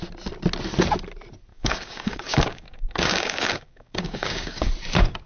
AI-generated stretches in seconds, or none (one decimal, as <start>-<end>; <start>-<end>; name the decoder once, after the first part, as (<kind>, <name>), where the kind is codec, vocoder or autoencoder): 1.5-4.7 (codec, DAC)